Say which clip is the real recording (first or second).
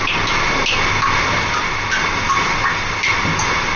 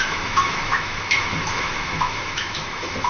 first